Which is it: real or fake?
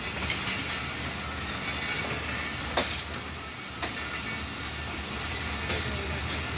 real